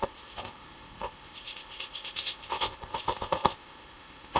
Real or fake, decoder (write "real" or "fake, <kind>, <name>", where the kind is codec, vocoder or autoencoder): fake, codec, ZipCodec